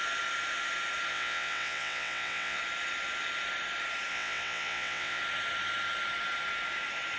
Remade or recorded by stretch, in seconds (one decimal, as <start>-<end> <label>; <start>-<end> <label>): 0.0-1.1 recorded; 1.1-2.6 remade; 2.6-4.1 recorded; 4.1-5.2 remade; 5.2-7.2 recorded